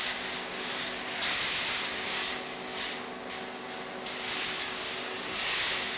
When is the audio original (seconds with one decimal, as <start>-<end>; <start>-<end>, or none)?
1.0-4.6